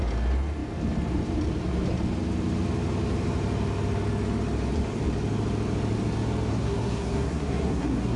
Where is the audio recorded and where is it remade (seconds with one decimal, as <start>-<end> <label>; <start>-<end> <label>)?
0.0-6.5 recorded; 6.5-8.2 remade